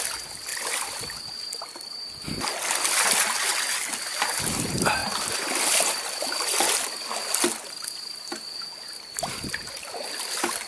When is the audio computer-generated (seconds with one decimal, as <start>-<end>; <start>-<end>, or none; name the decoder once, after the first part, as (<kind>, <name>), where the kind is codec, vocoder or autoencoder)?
none